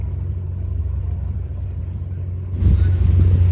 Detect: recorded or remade recorded